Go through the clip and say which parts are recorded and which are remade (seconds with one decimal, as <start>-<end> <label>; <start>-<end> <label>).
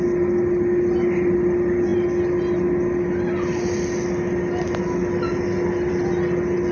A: 0.0-6.7 recorded